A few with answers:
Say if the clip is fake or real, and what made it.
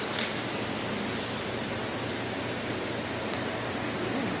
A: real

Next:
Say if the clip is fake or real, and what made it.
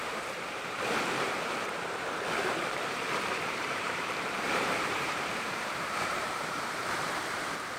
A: fake, vocoder, BigVGAN v2